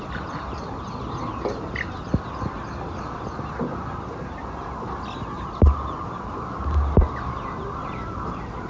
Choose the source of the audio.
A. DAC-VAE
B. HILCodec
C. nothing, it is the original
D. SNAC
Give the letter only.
C